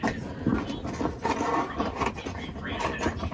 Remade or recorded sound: recorded